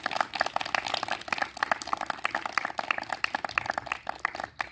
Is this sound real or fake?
real